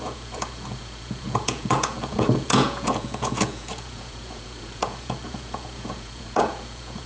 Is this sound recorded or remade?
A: remade